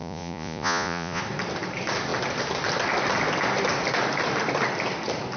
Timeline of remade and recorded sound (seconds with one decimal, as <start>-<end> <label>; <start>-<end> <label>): 0.0-1.2 remade; 1.2-5.4 recorded